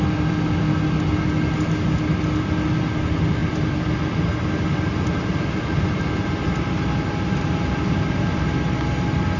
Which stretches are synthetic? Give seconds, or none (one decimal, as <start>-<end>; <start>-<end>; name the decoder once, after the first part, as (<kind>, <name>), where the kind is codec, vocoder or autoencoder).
none